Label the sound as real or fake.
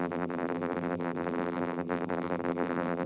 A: fake